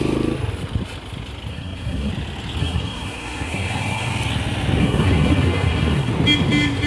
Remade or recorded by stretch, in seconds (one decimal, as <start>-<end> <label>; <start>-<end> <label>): 0.0-1.5 recorded; 1.5-2.1 remade; 2.1-2.6 recorded; 2.6-4.1 remade; 4.1-4.8 recorded; 4.8-6.1 remade; 6.1-6.9 recorded